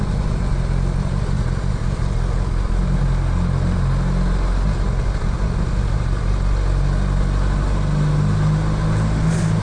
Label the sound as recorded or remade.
recorded